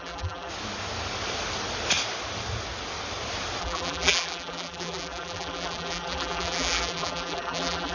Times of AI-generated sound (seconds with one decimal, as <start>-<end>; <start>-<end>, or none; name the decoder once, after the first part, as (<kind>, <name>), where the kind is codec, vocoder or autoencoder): 0.0-0.5 (vocoder, BigVGAN v2); 3.6-7.9